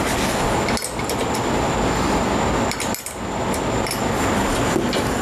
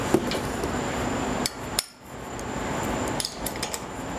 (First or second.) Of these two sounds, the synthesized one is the second